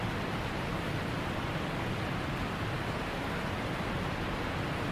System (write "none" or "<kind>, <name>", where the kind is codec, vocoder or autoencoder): none